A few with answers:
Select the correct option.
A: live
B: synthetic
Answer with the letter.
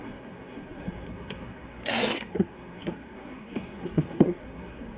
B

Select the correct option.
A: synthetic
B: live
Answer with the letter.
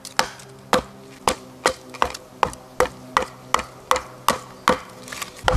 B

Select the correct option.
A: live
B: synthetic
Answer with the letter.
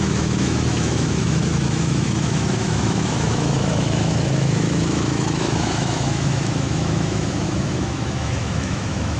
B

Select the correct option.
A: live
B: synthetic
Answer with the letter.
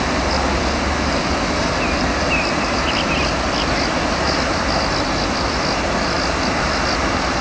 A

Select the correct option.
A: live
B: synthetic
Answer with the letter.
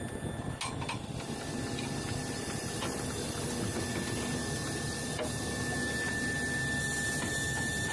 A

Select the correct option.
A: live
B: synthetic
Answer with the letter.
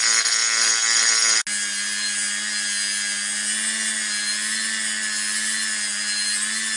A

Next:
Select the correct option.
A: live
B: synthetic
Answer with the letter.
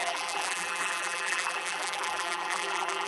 B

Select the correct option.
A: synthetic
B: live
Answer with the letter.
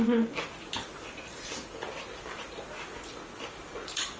B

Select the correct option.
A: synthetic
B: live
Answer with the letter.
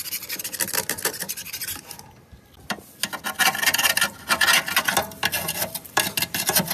B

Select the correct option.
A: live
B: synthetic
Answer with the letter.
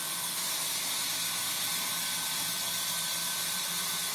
A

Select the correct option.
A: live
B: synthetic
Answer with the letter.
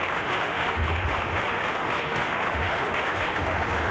B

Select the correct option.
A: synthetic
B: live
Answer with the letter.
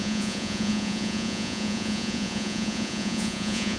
A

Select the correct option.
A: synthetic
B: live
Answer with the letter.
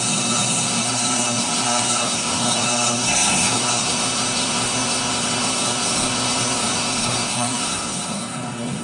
A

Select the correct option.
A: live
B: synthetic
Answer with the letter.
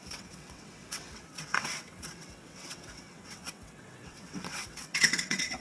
B